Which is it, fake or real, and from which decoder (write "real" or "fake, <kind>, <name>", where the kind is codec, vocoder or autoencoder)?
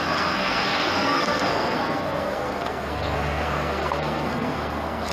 fake, codec, SNAC